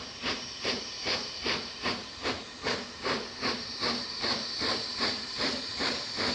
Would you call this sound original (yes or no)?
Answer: no